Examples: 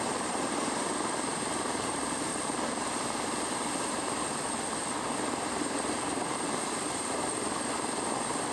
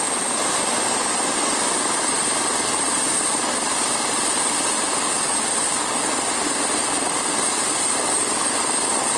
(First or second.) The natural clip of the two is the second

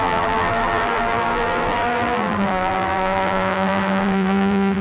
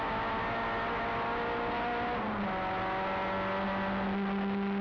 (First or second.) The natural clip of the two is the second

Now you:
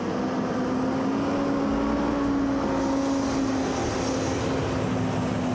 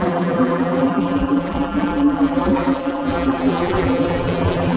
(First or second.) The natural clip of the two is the first